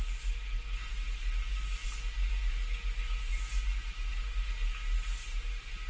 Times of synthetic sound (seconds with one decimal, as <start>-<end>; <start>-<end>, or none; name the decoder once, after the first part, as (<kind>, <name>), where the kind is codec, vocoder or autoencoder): none